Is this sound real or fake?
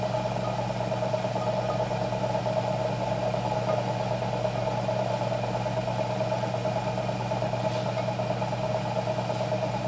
real